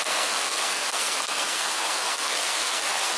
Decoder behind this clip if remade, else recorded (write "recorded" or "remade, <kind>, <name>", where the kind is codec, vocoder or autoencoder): remade, codec, SNAC